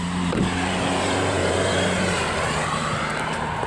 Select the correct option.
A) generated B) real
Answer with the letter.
A